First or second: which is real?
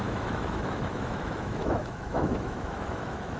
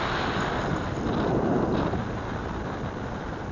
second